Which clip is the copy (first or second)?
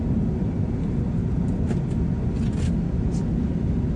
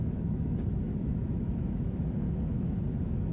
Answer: second